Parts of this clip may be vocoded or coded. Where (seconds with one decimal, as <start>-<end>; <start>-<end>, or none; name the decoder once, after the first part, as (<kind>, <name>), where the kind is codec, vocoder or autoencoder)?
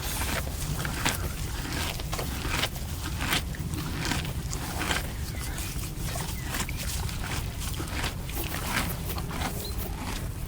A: 5.6-7.3 (vocoder, BigVGAN v2)